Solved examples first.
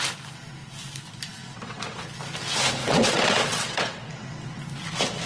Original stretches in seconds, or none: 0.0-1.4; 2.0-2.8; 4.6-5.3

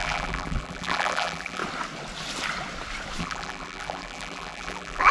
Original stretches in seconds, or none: 1.6-3.2

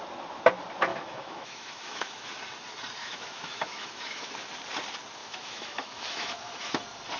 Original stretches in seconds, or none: 0.0-0.9; 2.3-3.0; 4.5-5.2; 6.8-7.2